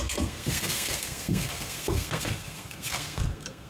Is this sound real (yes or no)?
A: no